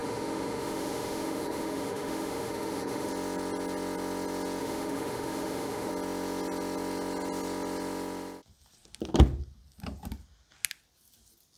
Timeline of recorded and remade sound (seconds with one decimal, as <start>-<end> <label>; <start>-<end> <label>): 0.0-3.1 remade; 3.1-4.6 recorded; 4.6-5.9 remade; 5.9-11.6 recorded